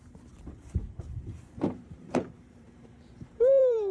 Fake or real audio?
fake